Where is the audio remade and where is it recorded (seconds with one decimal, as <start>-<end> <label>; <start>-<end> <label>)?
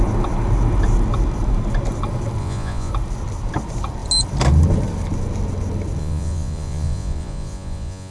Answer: 0.0-2.4 recorded; 2.4-2.9 remade; 2.9-6.0 recorded; 6.0-8.1 remade